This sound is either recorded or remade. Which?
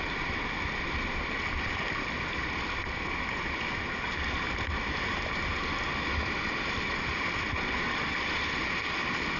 recorded